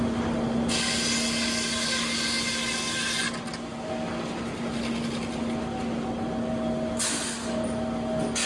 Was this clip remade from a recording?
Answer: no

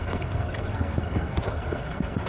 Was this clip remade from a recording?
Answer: yes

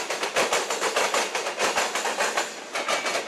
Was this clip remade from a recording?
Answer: no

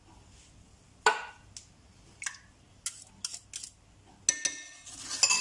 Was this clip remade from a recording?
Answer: no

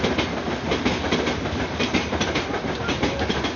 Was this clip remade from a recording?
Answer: no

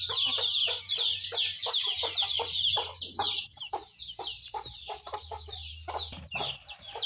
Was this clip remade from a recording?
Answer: yes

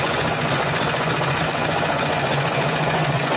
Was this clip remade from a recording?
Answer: yes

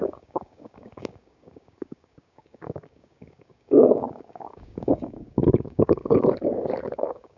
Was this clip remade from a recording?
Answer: yes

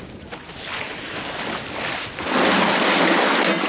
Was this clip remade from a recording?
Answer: no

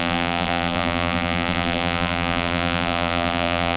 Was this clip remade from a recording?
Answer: yes